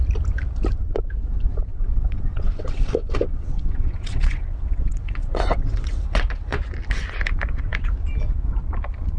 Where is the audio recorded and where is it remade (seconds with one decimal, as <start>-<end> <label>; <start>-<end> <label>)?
0.0-1.7 recorded; 1.7-6.6 remade; 6.6-9.2 recorded